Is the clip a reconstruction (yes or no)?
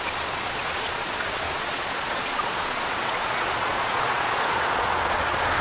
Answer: yes